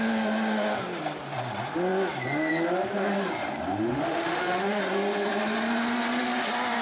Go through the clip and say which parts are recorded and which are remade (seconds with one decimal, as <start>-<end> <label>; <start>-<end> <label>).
0.0-3.9 recorded; 3.9-4.8 remade; 4.8-6.8 recorded